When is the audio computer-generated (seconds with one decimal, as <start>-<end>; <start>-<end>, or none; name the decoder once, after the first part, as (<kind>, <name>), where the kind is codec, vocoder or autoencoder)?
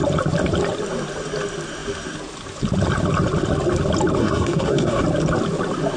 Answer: 4.2-5.0 (codec, SNAC)